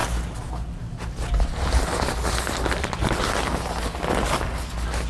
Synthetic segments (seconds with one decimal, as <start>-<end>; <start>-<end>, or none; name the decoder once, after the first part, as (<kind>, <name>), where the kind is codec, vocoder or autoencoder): none